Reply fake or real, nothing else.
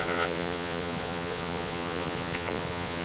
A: fake